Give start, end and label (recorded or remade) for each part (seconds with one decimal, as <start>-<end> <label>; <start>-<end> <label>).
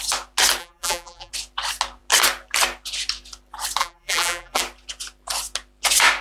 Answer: 0.0-0.6 recorded; 0.6-1.3 remade; 1.3-3.8 recorded; 3.8-4.6 remade; 4.6-6.2 recorded